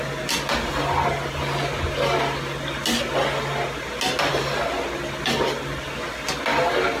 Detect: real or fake real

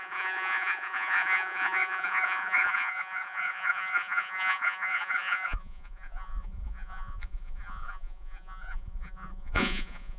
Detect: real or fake fake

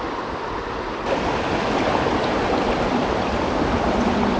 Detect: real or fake real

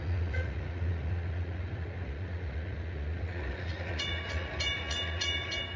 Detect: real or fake fake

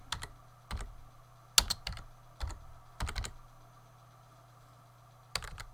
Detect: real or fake real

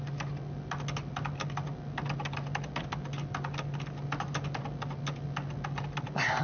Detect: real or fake real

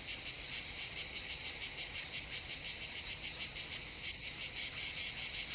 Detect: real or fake real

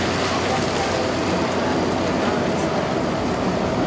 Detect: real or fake real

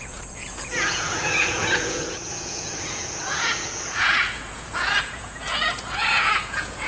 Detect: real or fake fake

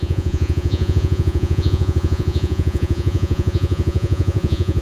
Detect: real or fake fake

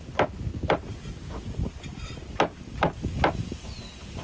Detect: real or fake real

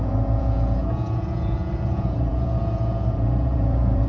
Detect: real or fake fake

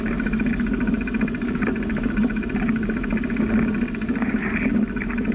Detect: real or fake real